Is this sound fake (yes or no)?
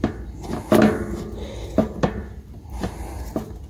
no